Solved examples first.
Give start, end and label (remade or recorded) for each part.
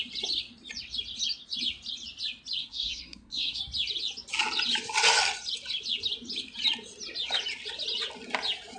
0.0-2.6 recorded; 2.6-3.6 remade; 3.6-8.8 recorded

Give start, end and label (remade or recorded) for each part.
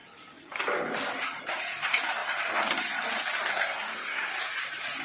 0.0-3.5 recorded; 3.5-4.3 remade; 4.3-5.0 recorded